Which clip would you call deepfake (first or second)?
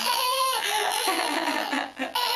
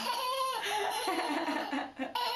first